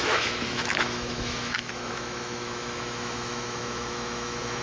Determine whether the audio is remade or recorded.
remade